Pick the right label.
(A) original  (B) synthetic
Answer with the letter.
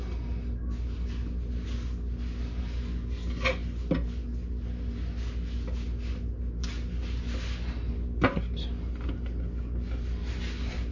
A